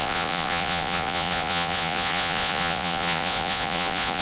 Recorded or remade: remade